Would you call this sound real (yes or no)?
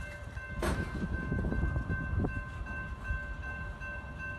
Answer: yes